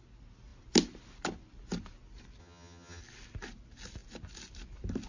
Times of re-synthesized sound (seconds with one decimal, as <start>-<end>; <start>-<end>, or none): 2.4-3.0